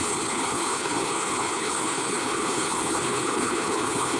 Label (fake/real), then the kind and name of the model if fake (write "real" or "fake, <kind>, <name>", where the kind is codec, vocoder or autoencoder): fake, codec, HILCodec